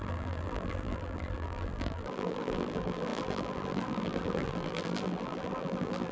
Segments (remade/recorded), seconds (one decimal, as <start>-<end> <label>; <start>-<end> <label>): 0.0-6.1 remade